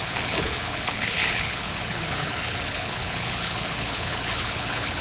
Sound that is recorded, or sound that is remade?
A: remade